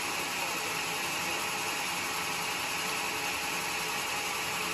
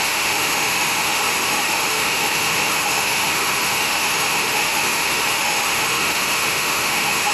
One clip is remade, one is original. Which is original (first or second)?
first